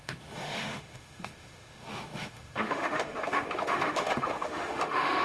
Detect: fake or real fake